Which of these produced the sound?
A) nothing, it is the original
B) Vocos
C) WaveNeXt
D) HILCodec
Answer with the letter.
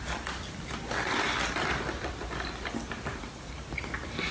A